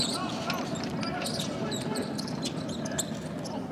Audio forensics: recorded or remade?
recorded